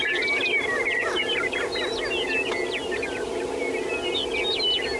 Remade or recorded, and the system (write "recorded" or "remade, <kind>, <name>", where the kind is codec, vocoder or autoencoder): recorded